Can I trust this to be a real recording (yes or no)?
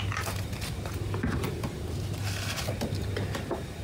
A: yes